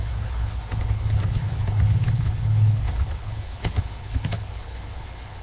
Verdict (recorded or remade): remade